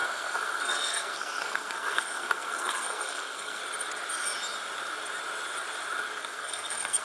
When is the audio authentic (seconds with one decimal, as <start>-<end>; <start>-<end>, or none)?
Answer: 3.6-6.2